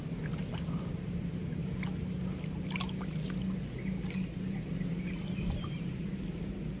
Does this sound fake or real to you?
real